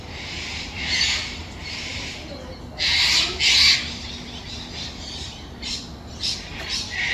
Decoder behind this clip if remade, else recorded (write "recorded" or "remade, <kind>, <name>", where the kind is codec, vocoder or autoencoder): recorded